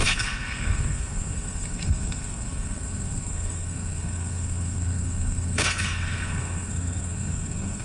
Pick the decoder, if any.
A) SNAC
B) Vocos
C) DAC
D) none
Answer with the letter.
A